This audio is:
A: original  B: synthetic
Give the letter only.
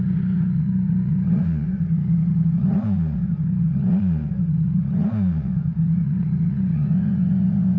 B